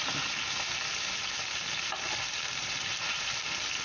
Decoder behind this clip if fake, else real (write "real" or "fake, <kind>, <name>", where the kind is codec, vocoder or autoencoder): real